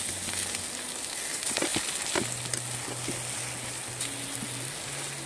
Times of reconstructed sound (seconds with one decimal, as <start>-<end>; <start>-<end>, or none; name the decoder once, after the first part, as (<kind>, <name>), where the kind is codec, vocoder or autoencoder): none